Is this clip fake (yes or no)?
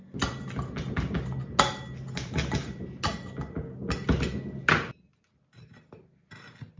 no